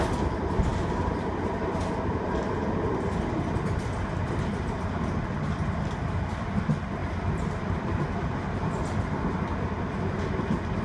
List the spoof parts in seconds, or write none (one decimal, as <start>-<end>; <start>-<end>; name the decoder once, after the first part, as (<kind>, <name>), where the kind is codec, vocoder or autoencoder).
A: none